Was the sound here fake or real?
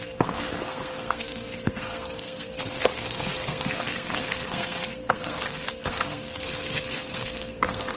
fake